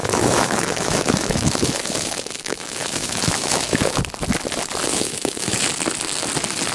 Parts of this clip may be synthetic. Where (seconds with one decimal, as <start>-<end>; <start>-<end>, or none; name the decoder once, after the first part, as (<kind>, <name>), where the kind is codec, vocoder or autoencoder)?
0.0-4.0 (autoencoder, DAC-VAE); 4.9-5.6